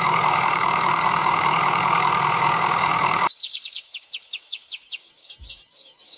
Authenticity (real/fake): fake